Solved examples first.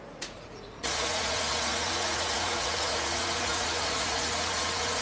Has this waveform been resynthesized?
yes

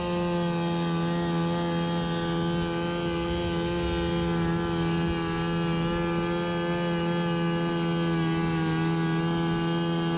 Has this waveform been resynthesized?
no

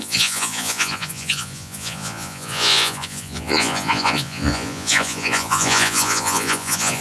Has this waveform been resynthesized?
yes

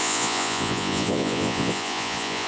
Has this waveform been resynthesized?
yes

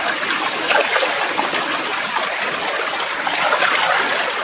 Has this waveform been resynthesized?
no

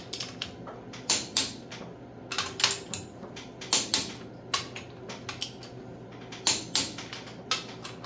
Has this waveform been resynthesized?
no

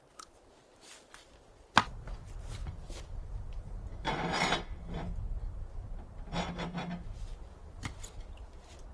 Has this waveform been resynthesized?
no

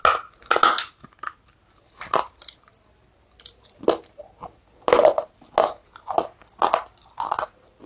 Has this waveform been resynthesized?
no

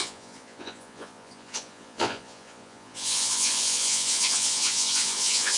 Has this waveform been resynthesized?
yes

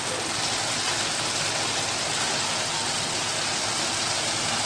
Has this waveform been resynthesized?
no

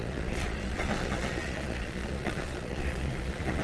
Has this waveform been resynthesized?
yes